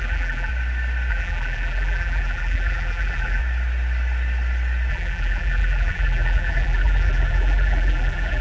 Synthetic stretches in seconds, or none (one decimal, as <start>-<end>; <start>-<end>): 0.0-0.5; 1.1-3.4; 4.9-8.4